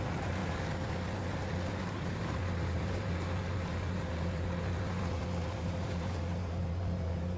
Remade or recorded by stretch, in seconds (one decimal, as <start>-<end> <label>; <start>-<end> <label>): 0.0-0.4 remade; 0.4-2.1 recorded; 2.1-7.4 remade